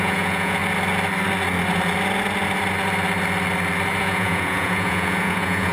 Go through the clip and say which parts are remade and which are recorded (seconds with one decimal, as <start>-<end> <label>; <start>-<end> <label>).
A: 0.0-0.6 remade; 0.6-4.0 recorded; 4.0-5.7 remade